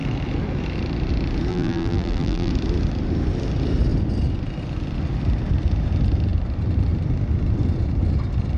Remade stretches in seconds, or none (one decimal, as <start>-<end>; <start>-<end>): 1.5-2.5